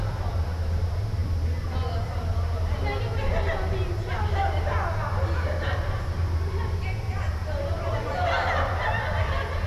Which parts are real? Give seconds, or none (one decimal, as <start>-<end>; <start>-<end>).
0.0-9.7